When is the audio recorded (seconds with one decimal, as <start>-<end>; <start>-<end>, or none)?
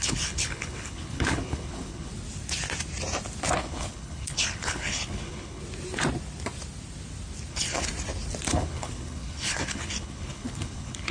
2.1-3.6; 5.6-7.5; 7.9-8.5